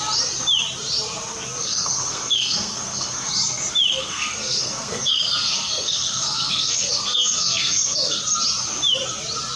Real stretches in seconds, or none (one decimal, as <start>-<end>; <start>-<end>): 0.0-1.6; 3.3-3.9; 8.2-9.6